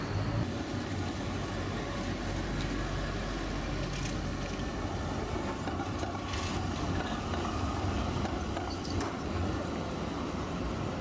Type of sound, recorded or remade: recorded